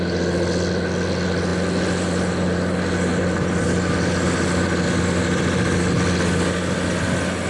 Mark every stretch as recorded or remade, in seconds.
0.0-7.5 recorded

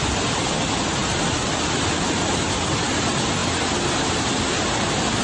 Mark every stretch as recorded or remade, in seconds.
0.0-5.2 recorded

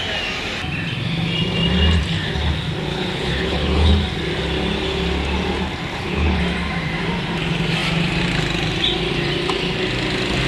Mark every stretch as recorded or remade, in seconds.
0.0-2.9 recorded; 2.9-3.9 remade; 3.9-5.9 recorded; 5.9-6.4 remade; 6.4-10.5 recorded

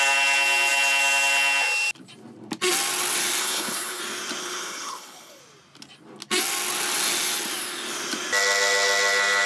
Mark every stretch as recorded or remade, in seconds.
0.0-3.4 recorded; 3.4-4.0 remade; 4.0-4.4 recorded; 4.4-5.4 remade; 5.4-9.5 recorded

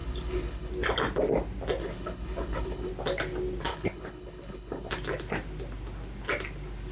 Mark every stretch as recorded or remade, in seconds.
0.0-0.7 remade; 0.7-1.8 recorded; 1.8-2.9 remade; 2.9-3.7 recorded; 3.7-4.9 remade; 4.9-6.9 recorded